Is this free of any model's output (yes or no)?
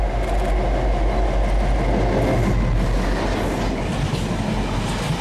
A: yes